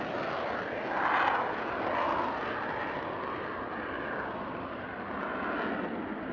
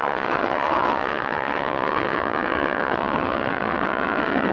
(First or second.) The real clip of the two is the first